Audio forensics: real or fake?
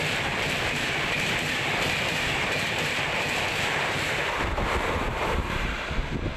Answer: fake